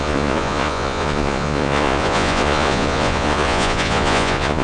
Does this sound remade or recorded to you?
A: remade